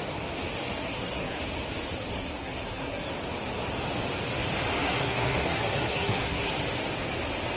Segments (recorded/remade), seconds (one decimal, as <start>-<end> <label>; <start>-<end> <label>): 0.0-0.8 recorded; 0.8-1.4 remade; 1.4-2.1 recorded; 2.1-3.1 remade; 3.1-4.8 recorded; 4.8-6.5 remade; 6.5-7.6 recorded